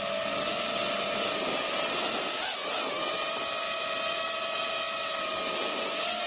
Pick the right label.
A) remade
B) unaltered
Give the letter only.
B